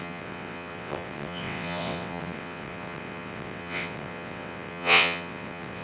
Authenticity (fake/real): fake